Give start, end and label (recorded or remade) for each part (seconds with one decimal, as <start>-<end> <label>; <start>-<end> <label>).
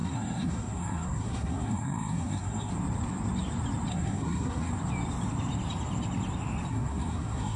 0.0-2.7 remade; 2.7-3.9 recorded; 3.9-4.7 remade; 4.7-6.7 recorded; 6.7-7.6 remade